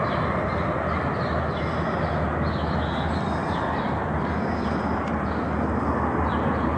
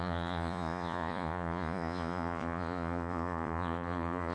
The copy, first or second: second